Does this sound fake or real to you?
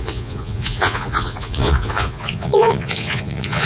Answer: fake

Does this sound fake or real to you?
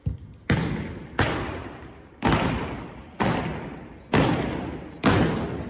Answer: real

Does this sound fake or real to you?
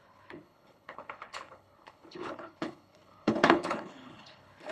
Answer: fake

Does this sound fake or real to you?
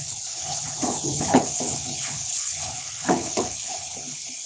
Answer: fake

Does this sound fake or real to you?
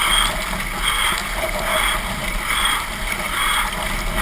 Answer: real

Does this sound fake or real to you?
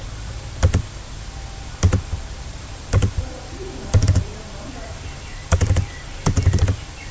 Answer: fake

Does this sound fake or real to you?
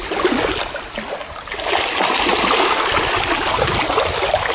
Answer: real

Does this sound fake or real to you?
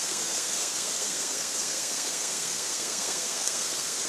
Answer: fake